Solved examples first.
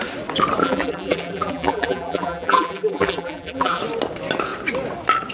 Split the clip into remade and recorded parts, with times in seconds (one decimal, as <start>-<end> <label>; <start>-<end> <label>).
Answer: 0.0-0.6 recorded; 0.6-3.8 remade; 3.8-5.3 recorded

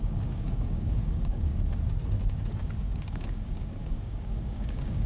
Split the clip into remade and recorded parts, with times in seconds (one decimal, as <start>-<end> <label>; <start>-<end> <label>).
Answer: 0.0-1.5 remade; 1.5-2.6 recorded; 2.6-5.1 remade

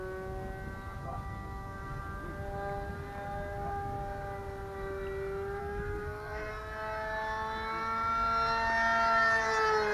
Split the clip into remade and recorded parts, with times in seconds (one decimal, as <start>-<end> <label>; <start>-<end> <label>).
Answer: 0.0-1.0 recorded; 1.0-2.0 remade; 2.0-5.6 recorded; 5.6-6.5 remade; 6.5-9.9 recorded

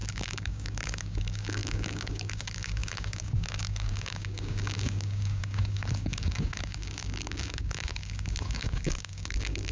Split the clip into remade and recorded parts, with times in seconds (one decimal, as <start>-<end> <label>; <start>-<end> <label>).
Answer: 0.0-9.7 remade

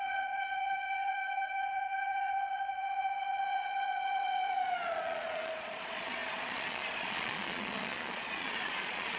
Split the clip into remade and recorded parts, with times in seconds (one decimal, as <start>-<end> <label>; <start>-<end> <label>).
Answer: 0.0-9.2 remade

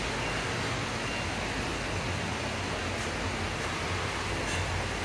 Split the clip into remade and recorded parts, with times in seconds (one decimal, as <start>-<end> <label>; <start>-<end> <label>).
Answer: 0.0-5.0 recorded

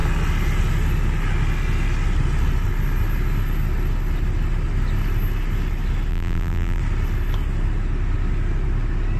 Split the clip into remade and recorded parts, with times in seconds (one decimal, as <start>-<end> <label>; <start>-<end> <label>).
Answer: 0.0-6.1 recorded; 6.1-6.8 remade; 6.8-9.2 recorded

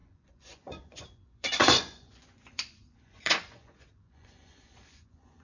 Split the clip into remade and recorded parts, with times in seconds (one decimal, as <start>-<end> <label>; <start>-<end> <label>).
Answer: 0.0-5.4 remade